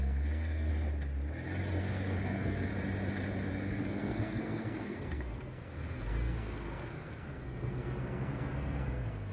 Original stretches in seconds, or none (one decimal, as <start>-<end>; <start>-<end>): 0.7-1.8; 2.7-3.5